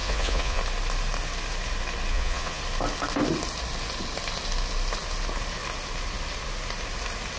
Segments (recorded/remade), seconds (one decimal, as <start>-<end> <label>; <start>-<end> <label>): 0.0-0.6 remade; 0.6-2.1 recorded; 2.1-2.6 remade; 2.6-7.4 recorded